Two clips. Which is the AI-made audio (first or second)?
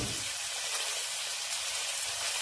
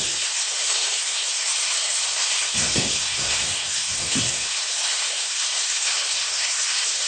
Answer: second